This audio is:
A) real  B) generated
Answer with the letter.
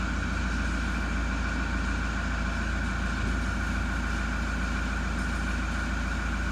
A